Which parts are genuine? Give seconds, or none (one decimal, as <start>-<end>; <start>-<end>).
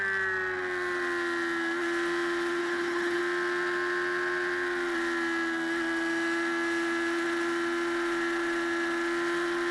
0.0-2.6; 3.2-9.7